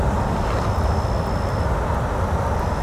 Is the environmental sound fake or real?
real